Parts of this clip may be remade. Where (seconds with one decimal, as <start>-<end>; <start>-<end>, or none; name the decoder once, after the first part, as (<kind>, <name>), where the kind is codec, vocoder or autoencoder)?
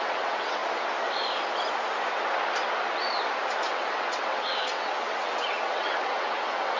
0.0-0.6 (vocoder, WaveNeXt); 3.7-6.8